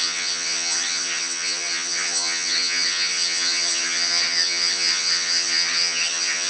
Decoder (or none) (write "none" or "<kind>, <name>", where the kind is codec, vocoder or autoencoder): vocoder, HiFi-GAN